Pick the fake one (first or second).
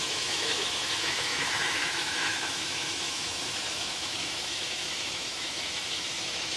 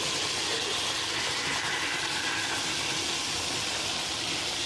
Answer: first